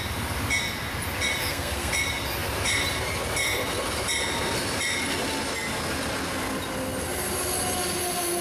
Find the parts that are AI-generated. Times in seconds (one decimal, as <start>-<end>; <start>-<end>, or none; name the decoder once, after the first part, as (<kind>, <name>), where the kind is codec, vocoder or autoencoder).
1.4-1.9 (codec, SNAC)